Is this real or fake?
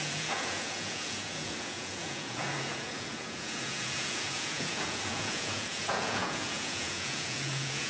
fake